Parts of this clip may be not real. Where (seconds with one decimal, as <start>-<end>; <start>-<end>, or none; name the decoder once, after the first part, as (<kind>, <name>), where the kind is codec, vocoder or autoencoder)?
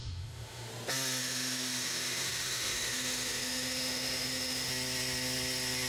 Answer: 0.0-0.7 (autoencoder, DAC-VAE); 1.2-4.7